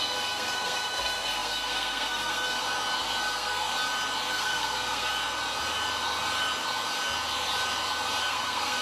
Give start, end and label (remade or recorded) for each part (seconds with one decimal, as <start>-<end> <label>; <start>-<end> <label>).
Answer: 0.0-2.6 remade; 2.6-3.2 recorded; 3.2-3.7 remade; 3.7-4.3 recorded; 4.3-5.1 remade; 5.1-8.2 recorded; 8.2-8.8 remade